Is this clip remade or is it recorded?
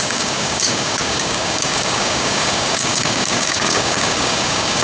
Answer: remade